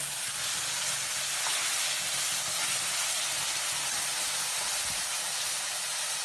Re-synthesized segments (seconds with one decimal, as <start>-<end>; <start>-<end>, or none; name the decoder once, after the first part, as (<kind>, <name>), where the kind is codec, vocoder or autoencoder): none